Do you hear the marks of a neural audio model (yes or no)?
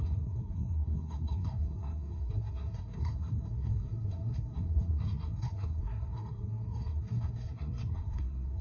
yes